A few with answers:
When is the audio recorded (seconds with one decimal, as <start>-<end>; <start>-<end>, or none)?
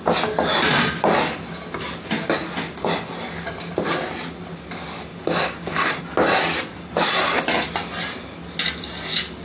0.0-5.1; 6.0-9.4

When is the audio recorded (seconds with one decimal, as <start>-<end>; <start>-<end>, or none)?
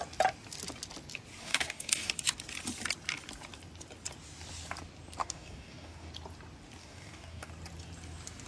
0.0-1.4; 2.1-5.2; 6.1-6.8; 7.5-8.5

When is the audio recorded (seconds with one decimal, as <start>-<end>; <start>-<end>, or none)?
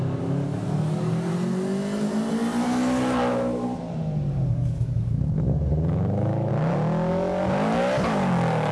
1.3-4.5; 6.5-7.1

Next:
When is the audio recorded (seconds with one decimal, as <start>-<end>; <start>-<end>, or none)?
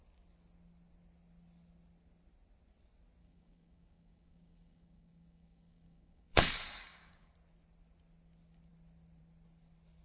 0.0-3.2; 7.3-10.0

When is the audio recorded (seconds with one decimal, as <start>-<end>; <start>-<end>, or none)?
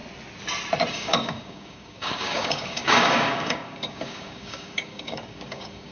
0.0-0.9